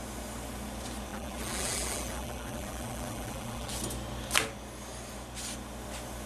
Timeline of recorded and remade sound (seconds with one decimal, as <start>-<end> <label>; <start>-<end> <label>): 0.0-1.1 recorded; 1.1-3.7 remade; 3.7-6.3 recorded